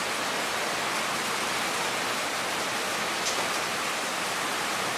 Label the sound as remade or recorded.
recorded